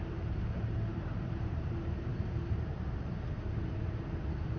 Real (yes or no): no